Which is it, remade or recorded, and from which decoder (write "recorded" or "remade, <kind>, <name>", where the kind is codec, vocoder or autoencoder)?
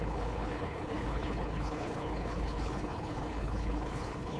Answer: remade, codec, HILCodec